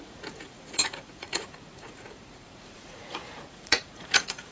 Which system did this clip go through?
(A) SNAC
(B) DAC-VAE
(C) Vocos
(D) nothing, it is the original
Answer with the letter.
C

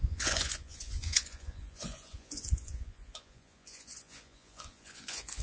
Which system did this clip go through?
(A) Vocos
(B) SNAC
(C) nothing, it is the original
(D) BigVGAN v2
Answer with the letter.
A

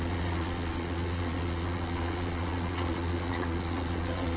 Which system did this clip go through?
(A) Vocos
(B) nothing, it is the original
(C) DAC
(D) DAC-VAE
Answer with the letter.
A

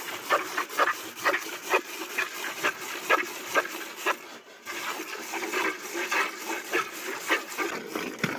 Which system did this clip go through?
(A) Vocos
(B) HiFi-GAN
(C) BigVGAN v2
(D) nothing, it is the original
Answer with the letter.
D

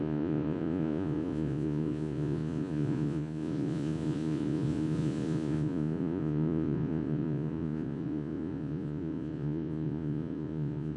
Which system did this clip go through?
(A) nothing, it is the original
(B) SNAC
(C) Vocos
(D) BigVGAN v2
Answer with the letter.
C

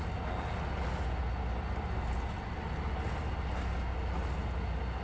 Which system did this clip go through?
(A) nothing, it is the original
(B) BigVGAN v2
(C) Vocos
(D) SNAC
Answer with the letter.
A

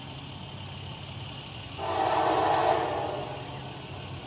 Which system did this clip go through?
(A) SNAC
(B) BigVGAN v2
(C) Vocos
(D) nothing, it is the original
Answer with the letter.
D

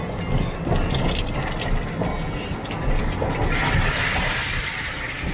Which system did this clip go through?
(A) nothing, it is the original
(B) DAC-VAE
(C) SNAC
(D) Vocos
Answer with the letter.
A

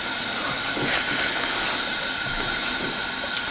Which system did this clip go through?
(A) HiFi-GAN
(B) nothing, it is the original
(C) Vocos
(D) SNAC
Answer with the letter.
B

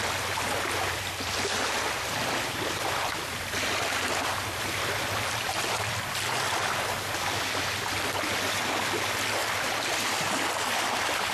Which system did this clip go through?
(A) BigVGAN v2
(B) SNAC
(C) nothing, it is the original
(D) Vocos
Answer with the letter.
C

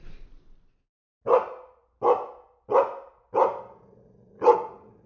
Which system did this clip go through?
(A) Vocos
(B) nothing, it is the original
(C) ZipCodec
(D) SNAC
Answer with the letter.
B